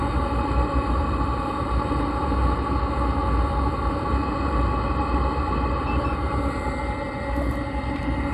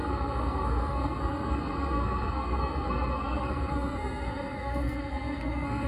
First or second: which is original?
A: first